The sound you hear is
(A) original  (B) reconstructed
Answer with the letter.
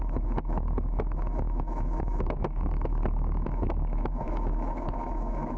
B